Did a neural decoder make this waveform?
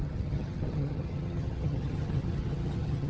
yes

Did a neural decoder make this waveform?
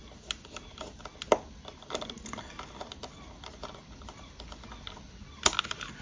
no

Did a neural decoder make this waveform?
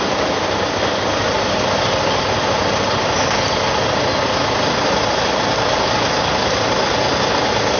no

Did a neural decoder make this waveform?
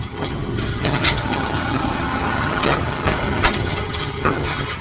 yes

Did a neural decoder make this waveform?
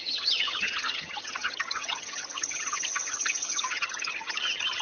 yes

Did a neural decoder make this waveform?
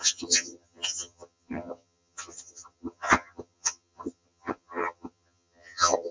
yes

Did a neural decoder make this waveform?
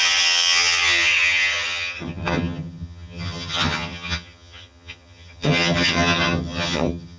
yes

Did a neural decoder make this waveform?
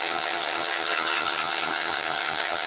yes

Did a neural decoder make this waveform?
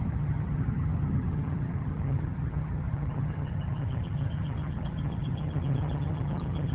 yes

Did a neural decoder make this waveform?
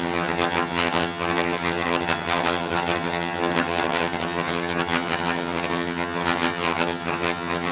yes